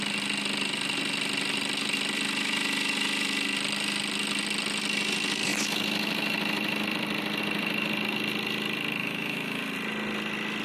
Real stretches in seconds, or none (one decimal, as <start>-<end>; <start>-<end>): 0.0-9.0; 9.6-10.6